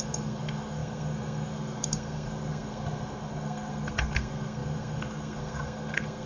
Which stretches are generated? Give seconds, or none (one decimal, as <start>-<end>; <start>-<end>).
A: 0.0-6.3